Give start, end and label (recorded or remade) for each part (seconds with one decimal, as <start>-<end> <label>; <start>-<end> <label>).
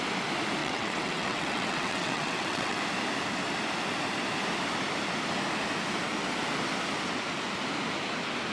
0.0-0.6 recorded; 0.6-2.8 remade; 2.8-8.5 recorded